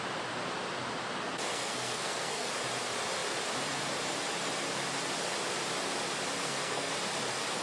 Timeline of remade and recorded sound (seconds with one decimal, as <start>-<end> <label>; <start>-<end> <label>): 0.0-1.5 recorded; 1.5-2.5 remade; 2.5-6.4 recorded; 6.4-6.9 remade; 6.9-7.6 recorded